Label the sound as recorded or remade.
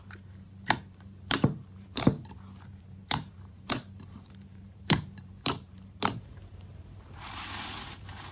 remade